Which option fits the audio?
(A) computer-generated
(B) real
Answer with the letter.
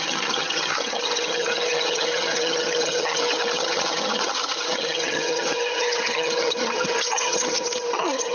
A